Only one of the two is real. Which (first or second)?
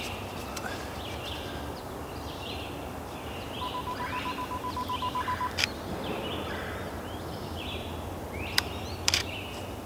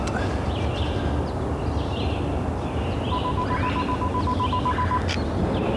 second